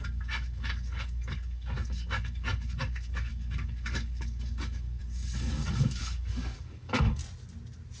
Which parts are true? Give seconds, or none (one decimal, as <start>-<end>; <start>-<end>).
7.2-8.0